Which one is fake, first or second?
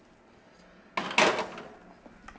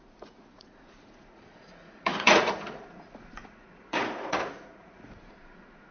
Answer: second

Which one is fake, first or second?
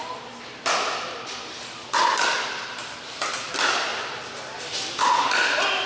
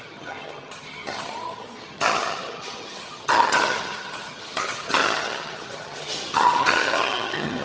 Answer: second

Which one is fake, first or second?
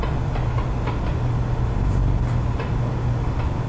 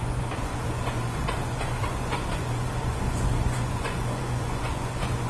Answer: second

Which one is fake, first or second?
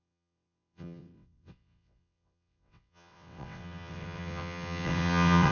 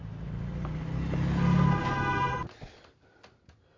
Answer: first